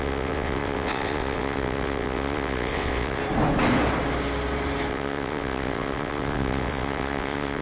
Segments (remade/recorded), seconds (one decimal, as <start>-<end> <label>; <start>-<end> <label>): 0.0-3.2 remade; 3.2-4.9 recorded; 4.9-7.6 remade

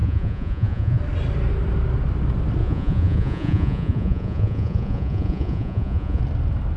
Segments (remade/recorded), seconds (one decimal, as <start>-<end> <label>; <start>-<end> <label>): 0.0-1.0 remade; 1.0-2.6 recorded; 2.6-6.2 remade; 6.2-6.8 recorded

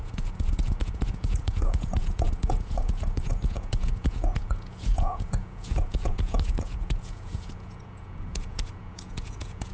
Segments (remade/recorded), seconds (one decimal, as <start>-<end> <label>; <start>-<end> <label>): 0.0-9.7 remade

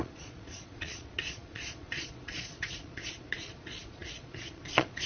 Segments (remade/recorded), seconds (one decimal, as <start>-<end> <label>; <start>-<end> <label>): 0.0-5.1 remade

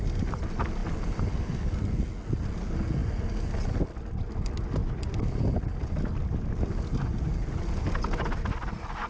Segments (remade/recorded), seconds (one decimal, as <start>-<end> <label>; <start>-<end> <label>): 0.0-9.1 recorded

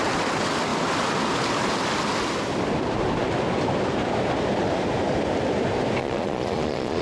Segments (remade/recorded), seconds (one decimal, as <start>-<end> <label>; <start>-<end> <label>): 0.0-6.0 recorded; 6.0-7.0 remade

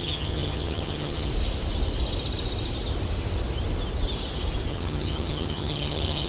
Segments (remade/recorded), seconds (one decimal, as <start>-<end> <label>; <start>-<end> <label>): 0.0-1.3 remade; 1.3-4.7 recorded; 4.7-6.3 remade